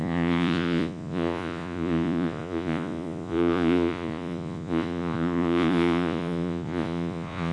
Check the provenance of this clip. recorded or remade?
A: remade